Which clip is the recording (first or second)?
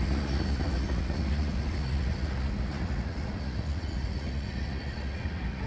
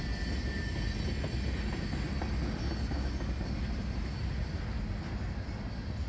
second